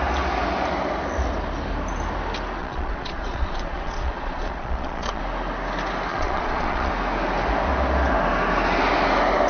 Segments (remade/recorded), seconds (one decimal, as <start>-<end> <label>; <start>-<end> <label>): 0.0-2.6 recorded; 2.6-5.2 remade; 5.2-6.1 recorded; 6.1-6.9 remade; 6.9-9.5 recorded